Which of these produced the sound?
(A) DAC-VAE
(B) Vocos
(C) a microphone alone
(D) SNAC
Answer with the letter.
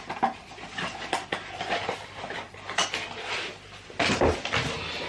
C